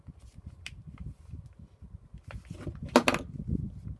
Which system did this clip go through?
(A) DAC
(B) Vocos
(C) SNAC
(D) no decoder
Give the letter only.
D